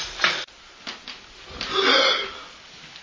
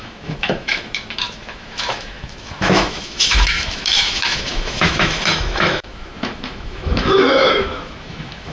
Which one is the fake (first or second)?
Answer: second